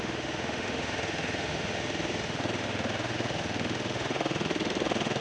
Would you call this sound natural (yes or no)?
no